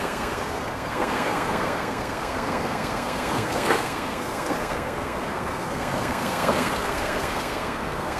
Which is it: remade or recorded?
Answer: remade